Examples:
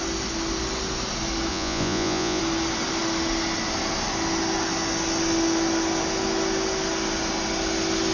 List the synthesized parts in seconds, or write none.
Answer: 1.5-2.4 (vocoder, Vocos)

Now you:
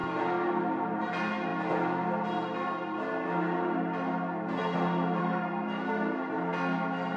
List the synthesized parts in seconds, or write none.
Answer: 5.2-6.3 (codec, SNAC)

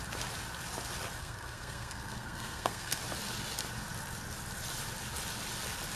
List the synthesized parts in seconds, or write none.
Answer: 1.2-3.0 (codec, SNAC)

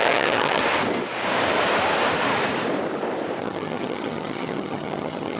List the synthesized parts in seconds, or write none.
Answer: 0.0-0.6 (vocoder, HiFi-GAN); 3.4-5.4